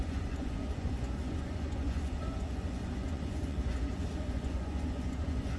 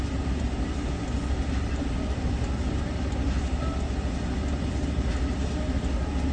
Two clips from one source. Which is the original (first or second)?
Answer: second